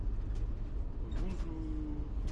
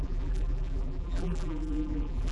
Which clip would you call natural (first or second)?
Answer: first